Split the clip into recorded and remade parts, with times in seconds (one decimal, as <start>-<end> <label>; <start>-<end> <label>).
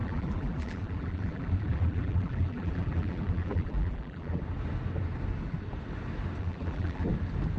0.0-4.4 remade; 4.4-6.4 recorded; 6.4-7.1 remade; 7.1-7.6 recorded